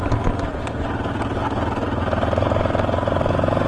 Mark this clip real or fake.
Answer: real